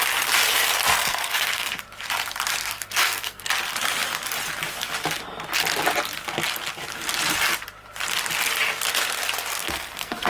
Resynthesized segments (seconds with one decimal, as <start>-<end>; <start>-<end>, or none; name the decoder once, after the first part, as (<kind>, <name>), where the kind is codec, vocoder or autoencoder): 1.0-1.8 (codec, SNAC); 2.6-3.5; 9.5-10.3